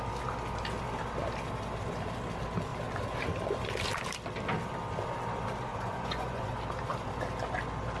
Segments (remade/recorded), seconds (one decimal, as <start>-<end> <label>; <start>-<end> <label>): 0.0-5.7 recorded; 5.7-6.6 remade; 6.6-8.0 recorded